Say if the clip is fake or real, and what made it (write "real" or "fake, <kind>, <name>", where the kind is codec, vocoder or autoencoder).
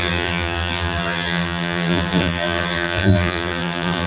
fake, vocoder, BigVGAN v2